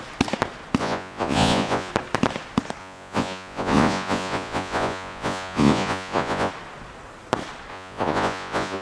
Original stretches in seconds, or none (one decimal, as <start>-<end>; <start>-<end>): 0.0-0.8; 1.9-2.8; 6.5-7.7